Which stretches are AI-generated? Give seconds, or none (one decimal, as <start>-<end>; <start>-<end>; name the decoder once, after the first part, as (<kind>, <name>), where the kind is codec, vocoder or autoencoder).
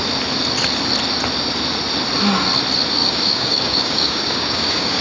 3.0-5.0 (codec, DAC)